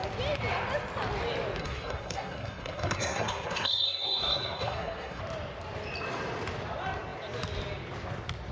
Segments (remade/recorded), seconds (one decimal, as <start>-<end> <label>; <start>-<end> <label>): 0.0-1.6 recorded; 1.6-5.2 remade; 5.2-8.5 recorded